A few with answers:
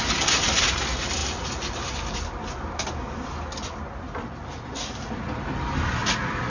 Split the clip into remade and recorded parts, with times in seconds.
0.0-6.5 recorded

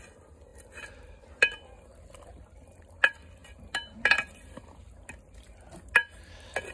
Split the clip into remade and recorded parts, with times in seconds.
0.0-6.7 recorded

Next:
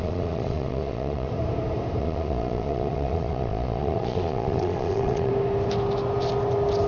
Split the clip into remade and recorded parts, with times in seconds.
0.0-1.3 remade; 1.3-2.0 recorded; 2.0-5.3 remade; 5.3-6.9 recorded

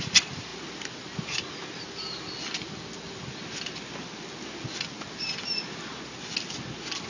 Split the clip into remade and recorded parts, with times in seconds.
0.0-7.1 recorded

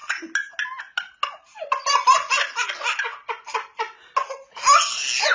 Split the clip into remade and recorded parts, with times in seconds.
0.0-5.3 recorded

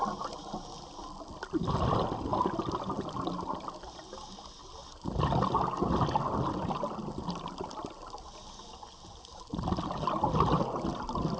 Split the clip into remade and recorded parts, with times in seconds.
0.0-11.4 recorded

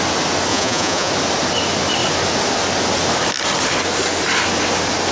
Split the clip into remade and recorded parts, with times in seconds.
0.0-0.5 recorded; 0.5-1.1 remade; 1.1-5.1 recorded

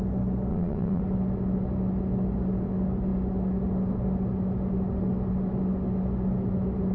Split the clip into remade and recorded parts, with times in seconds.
0.0-0.5 recorded; 0.5-1.0 remade; 1.0-6.9 recorded